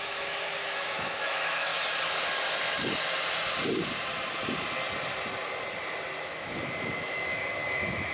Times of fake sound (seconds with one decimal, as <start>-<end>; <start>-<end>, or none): 0.0-1.7; 6.2-8.1